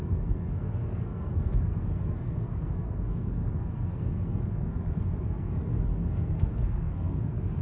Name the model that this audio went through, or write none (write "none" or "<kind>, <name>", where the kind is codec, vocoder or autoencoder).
codec, SNAC